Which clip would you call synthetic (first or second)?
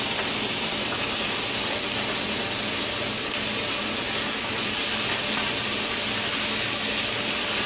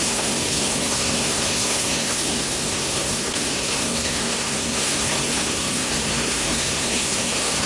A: second